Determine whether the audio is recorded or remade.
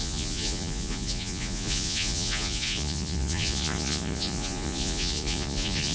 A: remade